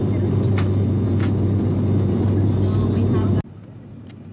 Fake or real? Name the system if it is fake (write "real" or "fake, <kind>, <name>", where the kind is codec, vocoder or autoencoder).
real